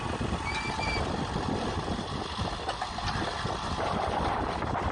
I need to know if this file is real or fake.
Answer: real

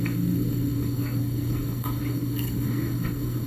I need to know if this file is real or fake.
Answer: fake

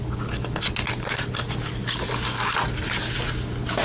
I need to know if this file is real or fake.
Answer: real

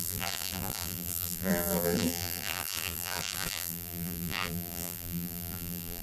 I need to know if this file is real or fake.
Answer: fake